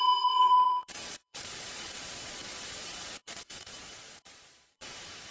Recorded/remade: remade